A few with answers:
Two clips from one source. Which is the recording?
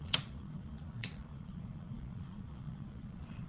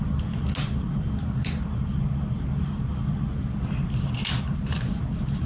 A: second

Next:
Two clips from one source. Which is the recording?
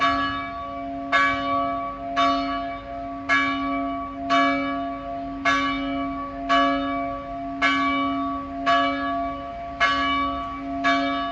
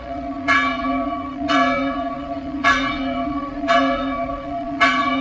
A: first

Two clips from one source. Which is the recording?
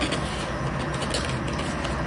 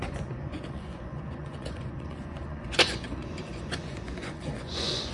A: first